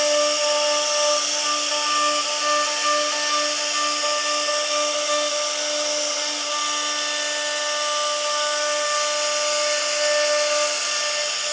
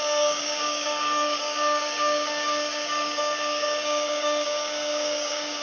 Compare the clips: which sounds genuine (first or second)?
first